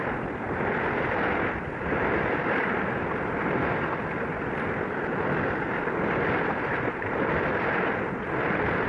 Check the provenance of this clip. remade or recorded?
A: recorded